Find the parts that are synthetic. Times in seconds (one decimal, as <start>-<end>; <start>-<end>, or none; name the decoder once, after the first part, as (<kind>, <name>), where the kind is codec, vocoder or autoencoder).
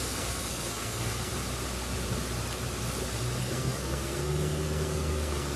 0.0-1.3 (codec, SNAC); 3.4-5.6